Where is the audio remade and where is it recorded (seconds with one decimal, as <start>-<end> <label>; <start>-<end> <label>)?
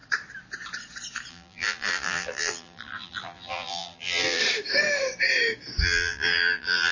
0.0-1.3 recorded; 1.3-4.4 remade; 4.4-5.8 recorded; 5.8-6.9 remade